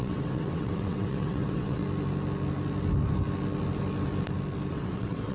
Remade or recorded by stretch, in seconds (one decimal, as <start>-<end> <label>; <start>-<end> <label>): 0.0-1.8 remade; 1.8-4.7 recorded; 4.7-5.3 remade